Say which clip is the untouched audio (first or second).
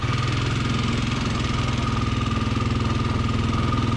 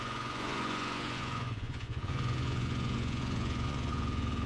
first